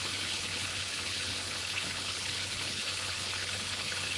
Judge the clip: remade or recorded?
remade